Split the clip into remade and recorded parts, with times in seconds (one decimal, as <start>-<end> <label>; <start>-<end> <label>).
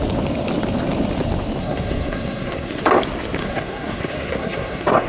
0.0-1.6 recorded; 1.6-2.8 remade; 2.8-3.4 recorded; 3.4-5.1 remade